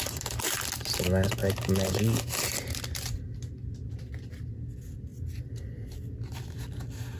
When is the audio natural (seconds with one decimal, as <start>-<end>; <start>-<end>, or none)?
0.0-7.2